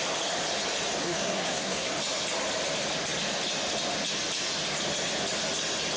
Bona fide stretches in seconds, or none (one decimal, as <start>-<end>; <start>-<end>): 0.0-1.0; 1.9-6.0